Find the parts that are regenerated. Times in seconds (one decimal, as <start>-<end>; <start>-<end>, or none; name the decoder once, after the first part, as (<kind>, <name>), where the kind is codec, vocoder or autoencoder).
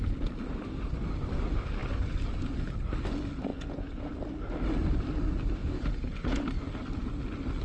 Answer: 3.5-4.1 (vocoder, Vocos); 5.6-6.4